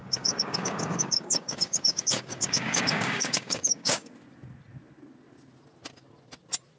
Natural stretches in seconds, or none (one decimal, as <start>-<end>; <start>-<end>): 4.1-6.8